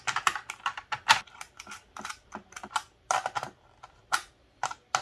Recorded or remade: recorded